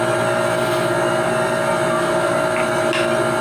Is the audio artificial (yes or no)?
no